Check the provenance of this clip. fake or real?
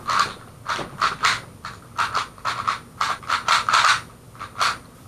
real